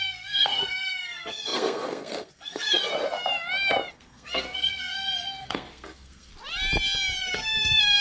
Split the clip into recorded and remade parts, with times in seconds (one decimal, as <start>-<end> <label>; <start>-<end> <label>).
0.0-2.9 remade; 2.9-3.9 recorded; 3.9-6.3 remade; 6.3-7.2 recorded; 7.2-8.0 remade